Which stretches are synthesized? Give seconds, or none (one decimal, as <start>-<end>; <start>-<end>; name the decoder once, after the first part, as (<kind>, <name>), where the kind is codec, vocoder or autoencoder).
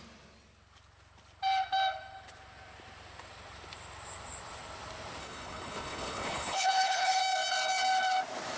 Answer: 5.2-7.2 (codec, HILCodec)